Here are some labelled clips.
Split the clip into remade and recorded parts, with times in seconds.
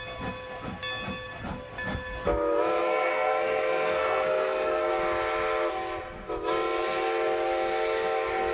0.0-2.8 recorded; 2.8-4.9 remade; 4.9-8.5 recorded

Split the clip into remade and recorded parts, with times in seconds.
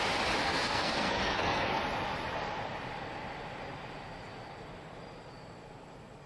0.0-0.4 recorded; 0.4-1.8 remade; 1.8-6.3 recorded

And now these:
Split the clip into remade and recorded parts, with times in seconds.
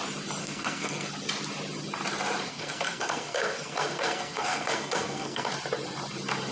0.0-0.4 recorded; 0.4-1.1 remade; 1.1-2.5 recorded; 2.5-5.5 remade; 5.5-6.5 recorded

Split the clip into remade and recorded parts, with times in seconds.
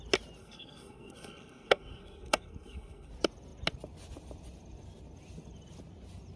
0.0-0.4 recorded; 0.4-3.1 remade; 3.1-6.4 recorded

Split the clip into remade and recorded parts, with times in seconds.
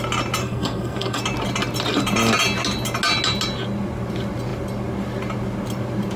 0.0-0.4 recorded; 0.4-1.2 remade; 1.2-6.2 recorded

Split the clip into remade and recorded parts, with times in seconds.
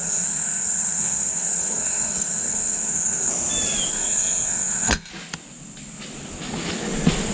0.0-3.3 remade; 3.3-3.9 recorded; 3.9-5.1 remade; 5.1-7.3 recorded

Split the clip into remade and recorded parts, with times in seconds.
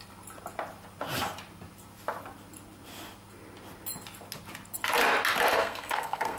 0.0-5.5 recorded; 5.5-6.4 remade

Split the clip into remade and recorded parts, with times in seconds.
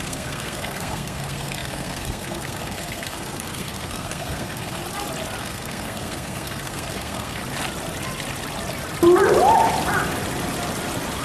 0.0-4.8 remade; 4.8-5.4 recorded; 5.4-7.4 remade; 7.4-11.2 recorded